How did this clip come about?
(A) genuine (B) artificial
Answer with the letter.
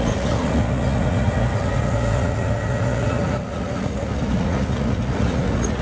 B